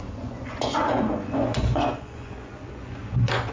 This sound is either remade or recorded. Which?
remade